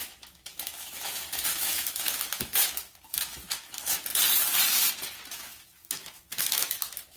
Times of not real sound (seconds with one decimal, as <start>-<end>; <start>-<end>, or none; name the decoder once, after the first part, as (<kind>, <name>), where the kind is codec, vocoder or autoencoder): 0.0-4.1 (autoencoder, DAC-VAE); 5.3-7.2